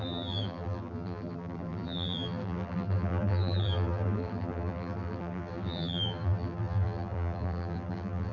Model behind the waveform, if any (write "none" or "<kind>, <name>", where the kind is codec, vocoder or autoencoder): vocoder, BigVGAN v2